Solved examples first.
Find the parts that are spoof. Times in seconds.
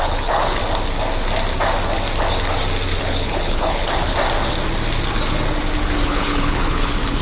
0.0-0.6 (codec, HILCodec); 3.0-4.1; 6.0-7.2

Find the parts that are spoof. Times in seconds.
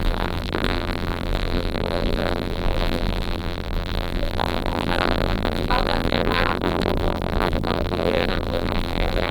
0.0-9.3 (vocoder, BigVGAN v2)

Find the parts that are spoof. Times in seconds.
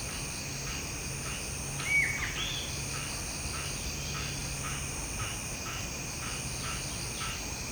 none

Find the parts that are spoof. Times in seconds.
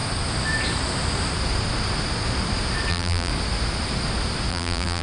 2.9-3.3 (vocoder, BigVGAN v2); 4.5-5.0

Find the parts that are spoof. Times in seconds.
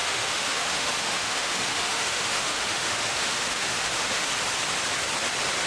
0.0-4.3 (autoencoder, DAC-VAE)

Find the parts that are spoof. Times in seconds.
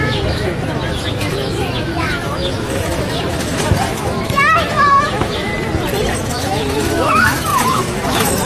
0.0-5.5 (autoencoder, DAC-VAE); 6.2-8.4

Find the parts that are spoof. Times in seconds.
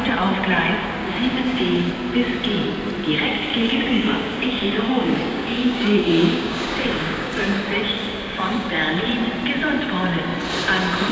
1.0-1.9 (codec, DAC); 3.5-7.6; 8.0-8.7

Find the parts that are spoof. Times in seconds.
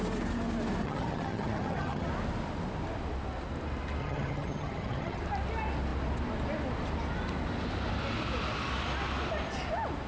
0.8-2.1 (vocoder, HiFi-GAN); 4.0-5.2